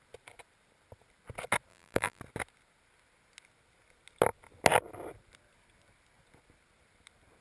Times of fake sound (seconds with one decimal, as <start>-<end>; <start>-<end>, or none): 1.7-2.2